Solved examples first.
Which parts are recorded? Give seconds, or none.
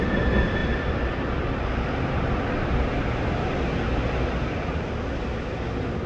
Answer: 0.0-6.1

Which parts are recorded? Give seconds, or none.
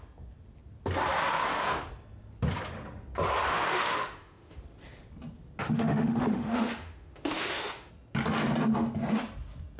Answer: 0.0-3.5; 4.6-5.6; 7.9-9.8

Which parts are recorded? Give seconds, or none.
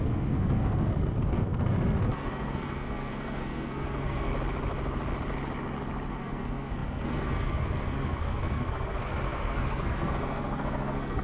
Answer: 4.3-6.1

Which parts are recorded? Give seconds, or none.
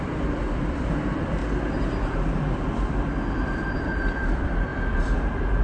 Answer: 1.4-2.0; 4.7-5.6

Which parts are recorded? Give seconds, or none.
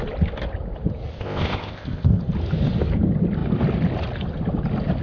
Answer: 0.0-1.1; 2.2-5.0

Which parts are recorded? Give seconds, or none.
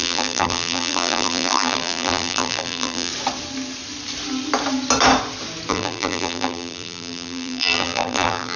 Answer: 3.1-5.7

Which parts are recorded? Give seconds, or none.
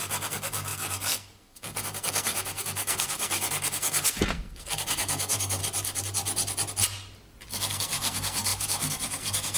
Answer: 5.6-7.5